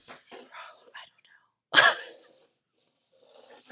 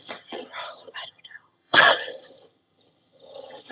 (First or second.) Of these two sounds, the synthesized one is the second